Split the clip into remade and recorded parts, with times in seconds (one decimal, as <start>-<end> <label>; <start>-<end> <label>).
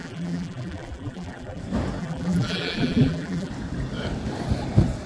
0.0-1.6 remade; 1.6-2.0 recorded; 2.0-3.5 remade; 3.5-5.1 recorded